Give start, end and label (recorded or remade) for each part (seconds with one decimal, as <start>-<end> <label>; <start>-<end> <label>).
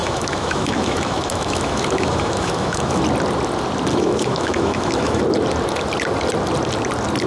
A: 0.0-3.0 remade; 3.0-3.9 recorded; 3.9-5.2 remade; 5.2-7.3 recorded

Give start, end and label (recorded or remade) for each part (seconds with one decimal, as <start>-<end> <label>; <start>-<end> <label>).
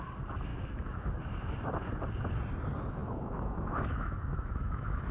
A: 0.0-0.5 recorded; 0.5-1.0 remade; 1.0-3.0 recorded; 3.0-5.1 remade